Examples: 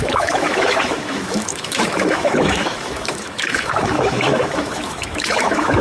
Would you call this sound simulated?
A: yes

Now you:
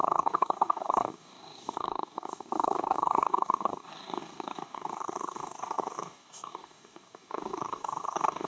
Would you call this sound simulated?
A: yes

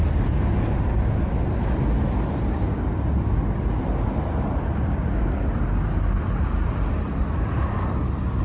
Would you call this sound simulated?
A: no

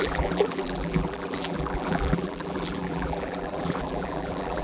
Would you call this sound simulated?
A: yes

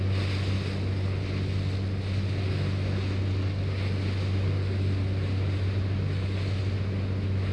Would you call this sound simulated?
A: no